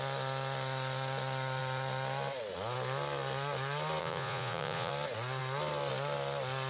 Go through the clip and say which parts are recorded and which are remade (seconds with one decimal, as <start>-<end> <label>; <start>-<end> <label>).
0.0-4.0 recorded; 4.0-4.9 remade; 4.9-6.7 recorded

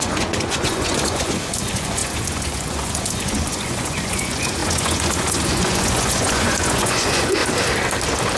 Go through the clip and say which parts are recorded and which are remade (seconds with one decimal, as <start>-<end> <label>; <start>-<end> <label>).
0.0-7.4 remade; 7.4-8.4 recorded

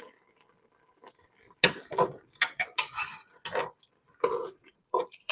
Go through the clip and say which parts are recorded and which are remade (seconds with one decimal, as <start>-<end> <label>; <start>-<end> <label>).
0.0-4.4 recorded; 4.4-5.3 remade

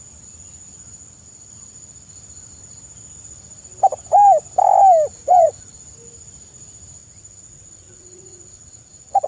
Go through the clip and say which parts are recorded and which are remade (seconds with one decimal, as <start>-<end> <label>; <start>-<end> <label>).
0.0-5.1 recorded; 5.1-5.7 remade; 5.7-7.0 recorded; 7.0-9.3 remade